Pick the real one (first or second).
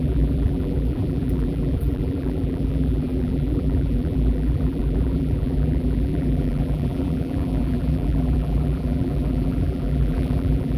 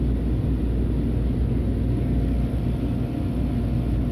second